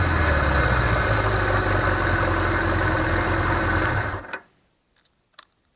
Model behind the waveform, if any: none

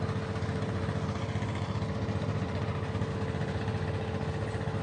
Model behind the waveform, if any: none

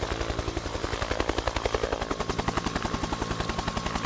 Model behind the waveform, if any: none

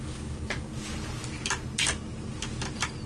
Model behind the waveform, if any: none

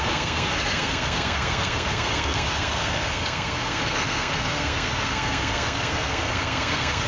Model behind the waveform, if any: codec, SNAC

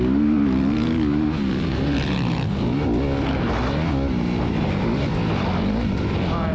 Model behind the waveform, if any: none